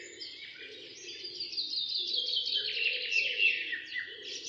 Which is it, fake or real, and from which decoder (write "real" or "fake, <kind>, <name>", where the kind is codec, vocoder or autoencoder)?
real